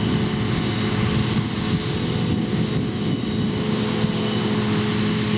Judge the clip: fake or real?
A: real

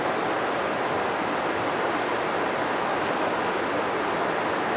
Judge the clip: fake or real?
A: real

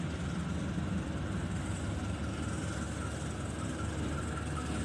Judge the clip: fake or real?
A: real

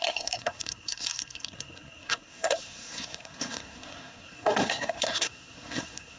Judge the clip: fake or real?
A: fake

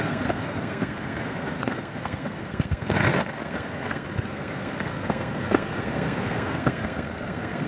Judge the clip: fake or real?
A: fake